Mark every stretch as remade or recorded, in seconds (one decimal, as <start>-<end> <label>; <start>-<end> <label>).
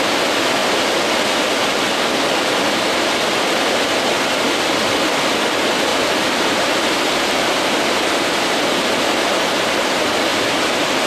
0.0-5.9 recorded; 5.9-9.0 remade; 9.0-10.3 recorded; 10.3-11.1 remade